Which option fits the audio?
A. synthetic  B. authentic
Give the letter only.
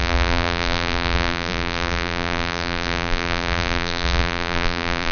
A